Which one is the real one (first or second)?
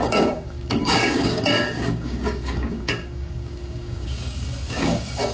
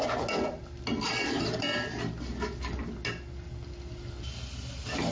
second